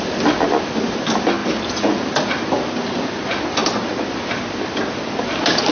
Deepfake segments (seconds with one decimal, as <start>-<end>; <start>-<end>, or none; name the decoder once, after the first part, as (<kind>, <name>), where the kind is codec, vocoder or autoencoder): none

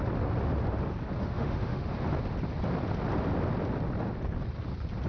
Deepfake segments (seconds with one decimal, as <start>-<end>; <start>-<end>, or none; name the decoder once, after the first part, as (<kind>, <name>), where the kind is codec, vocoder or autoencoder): 1.2-1.8 (autoencoder, DAC-VAE)

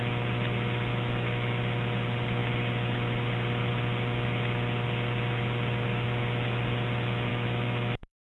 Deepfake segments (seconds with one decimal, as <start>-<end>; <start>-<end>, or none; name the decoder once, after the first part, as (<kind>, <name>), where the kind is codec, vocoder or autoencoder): 0.9-1.6 (autoencoder, DAC-VAE); 7.3-8.3

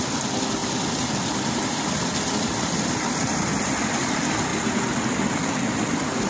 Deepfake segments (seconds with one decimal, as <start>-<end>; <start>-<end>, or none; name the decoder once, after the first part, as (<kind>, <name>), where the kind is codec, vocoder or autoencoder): none